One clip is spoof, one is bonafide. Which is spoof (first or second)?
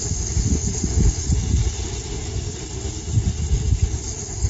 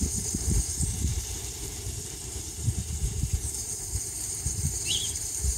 second